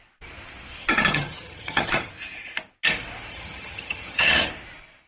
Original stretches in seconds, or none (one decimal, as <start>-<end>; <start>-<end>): 0.0-0.8; 2.1-3.3; 4.5-5.1